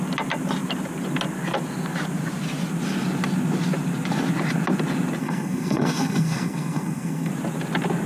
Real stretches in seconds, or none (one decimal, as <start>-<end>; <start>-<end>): 0.0-5.2; 7.3-8.1